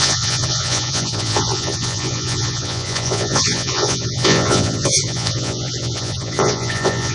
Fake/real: fake